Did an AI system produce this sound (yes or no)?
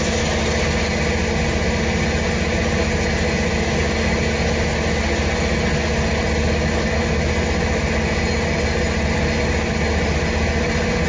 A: no